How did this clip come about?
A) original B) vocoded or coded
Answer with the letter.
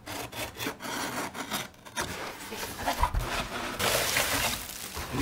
A